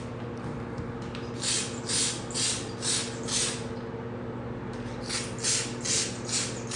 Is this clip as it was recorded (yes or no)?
yes